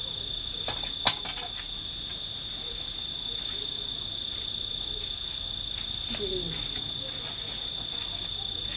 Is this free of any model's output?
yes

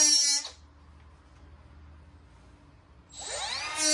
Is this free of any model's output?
yes